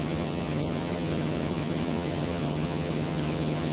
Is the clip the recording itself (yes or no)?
no